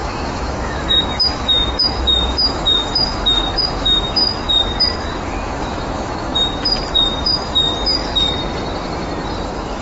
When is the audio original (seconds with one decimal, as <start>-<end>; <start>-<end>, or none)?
4.2-5.2; 6.3-9.4